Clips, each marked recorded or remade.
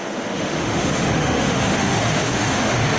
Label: remade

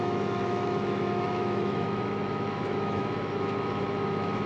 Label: remade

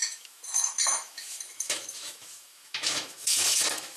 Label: remade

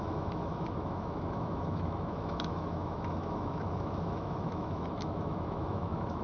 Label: remade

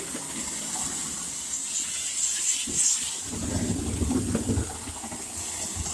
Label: recorded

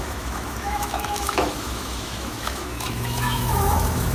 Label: remade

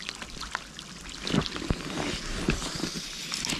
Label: recorded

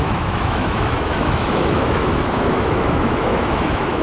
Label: remade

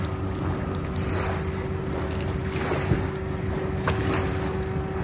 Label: recorded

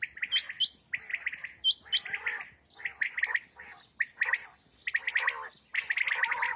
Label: recorded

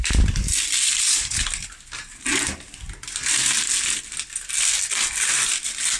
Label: recorded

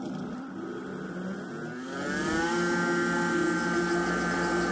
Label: recorded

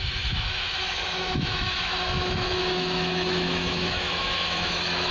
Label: remade